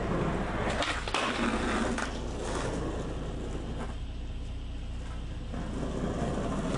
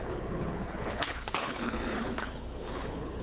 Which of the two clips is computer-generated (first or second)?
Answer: second